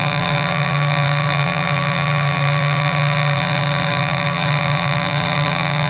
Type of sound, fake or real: fake